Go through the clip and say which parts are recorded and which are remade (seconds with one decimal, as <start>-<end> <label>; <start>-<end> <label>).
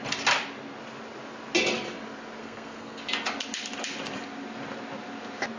0.0-2.4 recorded; 2.4-3.0 remade; 3.0-5.6 recorded